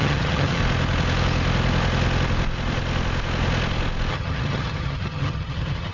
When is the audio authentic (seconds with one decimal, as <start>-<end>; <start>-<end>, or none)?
0.6-4.1